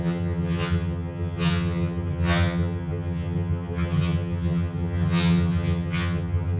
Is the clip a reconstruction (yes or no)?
yes